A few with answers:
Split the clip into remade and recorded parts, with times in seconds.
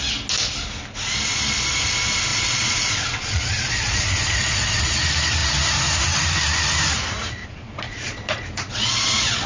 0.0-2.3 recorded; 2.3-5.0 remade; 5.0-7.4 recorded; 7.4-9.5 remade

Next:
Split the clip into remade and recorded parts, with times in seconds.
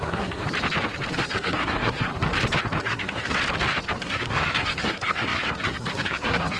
0.0-0.4 remade; 0.4-1.1 recorded; 1.1-2.1 remade; 2.1-2.8 recorded; 2.8-3.4 remade; 3.4-4.0 recorded; 4.0-6.6 remade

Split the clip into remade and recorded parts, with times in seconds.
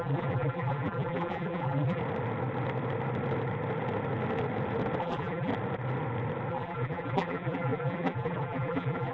0.0-2.0 remade; 2.0-5.0 recorded; 5.0-5.5 remade; 5.5-6.5 recorded; 6.5-9.1 remade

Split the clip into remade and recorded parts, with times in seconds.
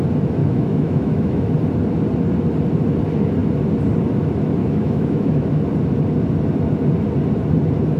0.0-0.4 recorded; 0.4-1.5 remade; 1.5-4.6 recorded; 4.6-5.6 remade; 5.6-8.0 recorded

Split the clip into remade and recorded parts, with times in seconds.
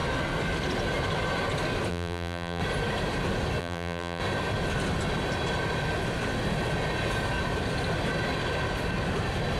0.0-1.9 recorded; 1.9-2.6 remade; 2.6-3.6 recorded; 3.6-4.2 remade; 4.2-9.6 recorded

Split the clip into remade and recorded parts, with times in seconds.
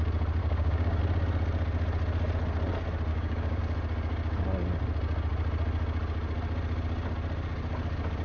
0.0-0.4 recorded; 0.4-1.0 remade; 1.0-3.1 recorded; 3.1-3.6 remade; 3.6-8.2 recorded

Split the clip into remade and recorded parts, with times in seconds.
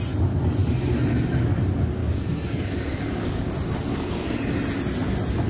0.0-2.0 recorded; 2.0-3.5 remade; 3.5-3.9 recorded; 3.9-4.4 remade; 4.4-5.5 recorded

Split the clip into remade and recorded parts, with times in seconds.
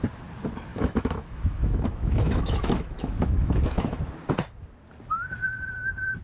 0.0-0.7 recorded; 0.7-4.0 remade; 4.0-6.2 recorded